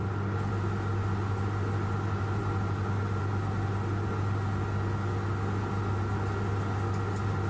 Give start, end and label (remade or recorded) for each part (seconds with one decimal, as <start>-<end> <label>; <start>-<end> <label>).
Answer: 0.0-7.5 recorded